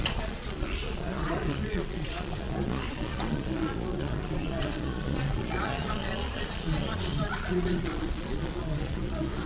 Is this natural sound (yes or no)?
no